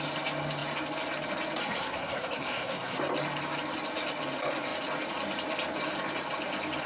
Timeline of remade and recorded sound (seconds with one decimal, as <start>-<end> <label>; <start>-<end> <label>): 0.0-1.6 recorded; 1.6-3.0 remade; 3.0-6.9 recorded